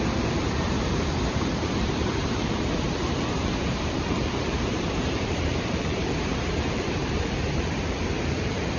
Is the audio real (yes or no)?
no